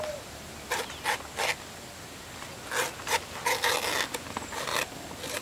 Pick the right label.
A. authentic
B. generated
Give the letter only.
A